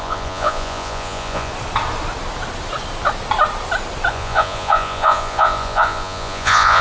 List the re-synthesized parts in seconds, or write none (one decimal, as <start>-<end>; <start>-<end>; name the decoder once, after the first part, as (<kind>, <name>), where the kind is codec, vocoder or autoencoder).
0.0-1.5 (vocoder, Vocos); 4.1-6.8